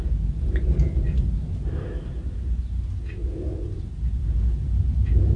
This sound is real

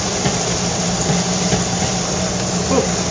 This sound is real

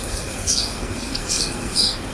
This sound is fake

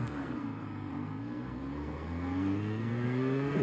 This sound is fake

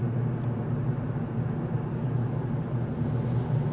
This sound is real